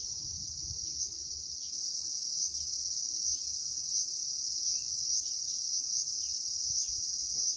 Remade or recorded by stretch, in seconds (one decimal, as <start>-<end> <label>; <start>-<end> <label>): 0.0-7.6 recorded